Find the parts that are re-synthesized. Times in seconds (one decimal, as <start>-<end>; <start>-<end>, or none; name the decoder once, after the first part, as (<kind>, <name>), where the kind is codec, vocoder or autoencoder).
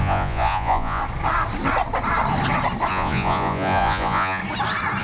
0.0-1.0 (vocoder, Vocos); 2.9-4.4